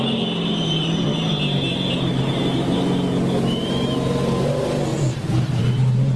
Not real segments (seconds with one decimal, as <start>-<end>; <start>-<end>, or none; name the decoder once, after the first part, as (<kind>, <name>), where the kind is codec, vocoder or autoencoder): 0.5-2.3 (vocoder, BigVGAN v2); 4.9-5.6